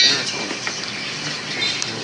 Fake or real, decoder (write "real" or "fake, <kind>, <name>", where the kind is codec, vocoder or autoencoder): real